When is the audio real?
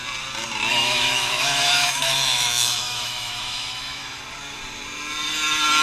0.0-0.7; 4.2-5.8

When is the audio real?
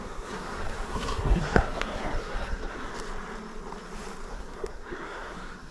2.9-4.3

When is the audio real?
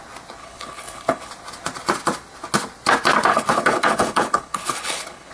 0.0-0.4; 1.3-3.3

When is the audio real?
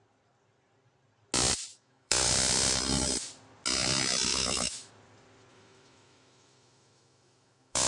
0.0-1.7; 2.3-4.3; 4.9-5.5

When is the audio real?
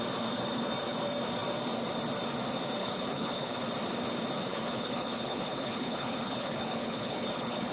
0.0-2.8; 3.6-4.5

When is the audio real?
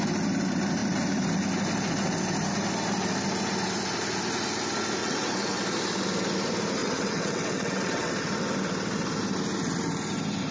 0.0-5.0; 5.6-6.8; 8.1-10.5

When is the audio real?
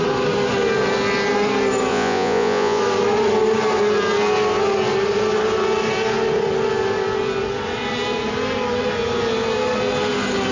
0.0-1.9; 2.8-10.5